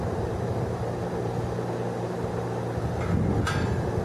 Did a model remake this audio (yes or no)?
no